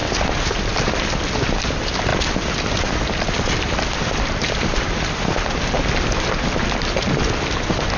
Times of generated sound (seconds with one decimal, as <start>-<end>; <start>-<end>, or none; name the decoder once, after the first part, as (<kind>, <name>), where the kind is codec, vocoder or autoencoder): 2.1-5.7 (vocoder, BigVGAN v2)